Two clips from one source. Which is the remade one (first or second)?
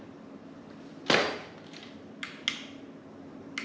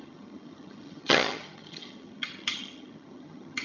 second